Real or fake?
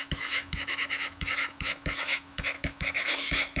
fake